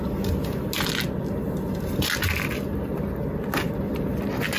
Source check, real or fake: real